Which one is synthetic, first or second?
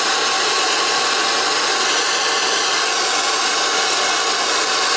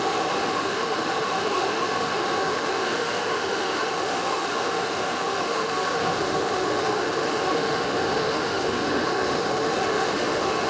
second